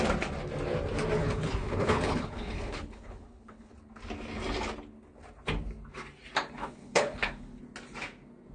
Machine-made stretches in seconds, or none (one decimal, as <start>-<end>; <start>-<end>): 1.2-3.7; 6.6-7.6